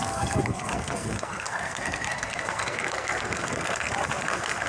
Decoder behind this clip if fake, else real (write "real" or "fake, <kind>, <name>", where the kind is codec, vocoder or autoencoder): fake, codec, SNAC